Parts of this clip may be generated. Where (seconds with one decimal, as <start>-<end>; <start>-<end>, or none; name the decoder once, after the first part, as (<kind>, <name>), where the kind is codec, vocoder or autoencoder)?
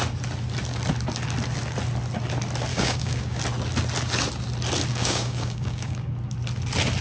2.7-3.4 (codec, DAC); 4.9-6.1